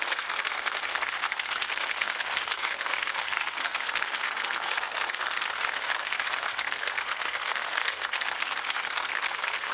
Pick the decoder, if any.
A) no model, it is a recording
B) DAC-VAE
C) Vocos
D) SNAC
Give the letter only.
D